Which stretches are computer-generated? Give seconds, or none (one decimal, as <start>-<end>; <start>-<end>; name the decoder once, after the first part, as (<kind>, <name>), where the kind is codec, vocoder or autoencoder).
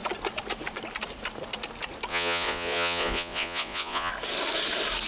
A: 2.1-4.1 (vocoder, Vocos)